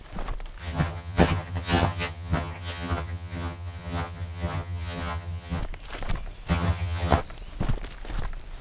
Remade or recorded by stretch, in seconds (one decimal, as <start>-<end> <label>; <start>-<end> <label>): 0.0-0.6 recorded; 0.6-5.6 remade; 5.6-6.5 recorded; 6.5-7.2 remade; 7.2-8.6 recorded